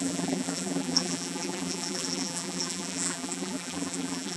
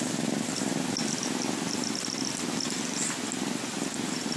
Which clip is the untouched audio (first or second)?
second